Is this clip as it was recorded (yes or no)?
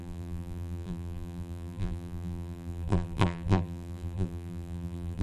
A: no